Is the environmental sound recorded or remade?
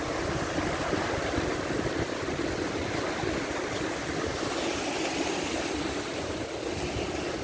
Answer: recorded